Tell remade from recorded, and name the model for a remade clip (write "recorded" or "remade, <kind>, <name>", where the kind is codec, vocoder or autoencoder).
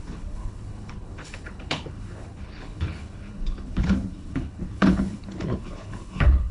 remade, codec, HILCodec